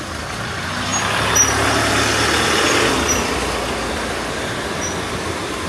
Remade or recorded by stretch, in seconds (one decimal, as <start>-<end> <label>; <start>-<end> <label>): 0.0-5.7 recorded